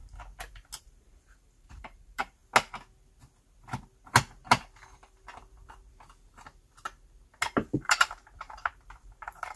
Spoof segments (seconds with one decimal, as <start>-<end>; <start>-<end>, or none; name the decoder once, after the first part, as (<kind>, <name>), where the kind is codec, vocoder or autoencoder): 0.8-2.4 (vocoder, BigVGAN v2); 7.5-9.6